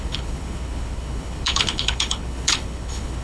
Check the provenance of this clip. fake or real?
fake